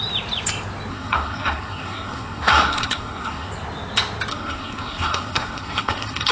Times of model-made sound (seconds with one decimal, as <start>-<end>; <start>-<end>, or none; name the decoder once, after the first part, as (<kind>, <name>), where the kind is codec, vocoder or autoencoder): 0.9-3.5 (codec, SNAC); 4.3-6.3